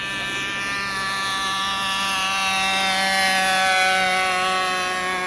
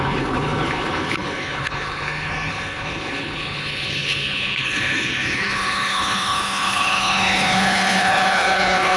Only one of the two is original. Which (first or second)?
first